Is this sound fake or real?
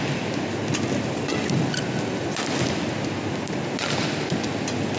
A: real